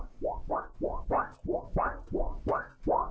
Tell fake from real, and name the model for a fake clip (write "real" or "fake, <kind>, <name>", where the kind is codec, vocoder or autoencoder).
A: real